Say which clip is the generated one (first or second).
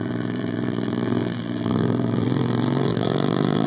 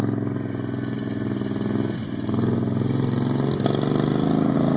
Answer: first